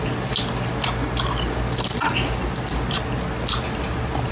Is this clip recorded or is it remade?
recorded